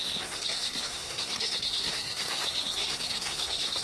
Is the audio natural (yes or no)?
no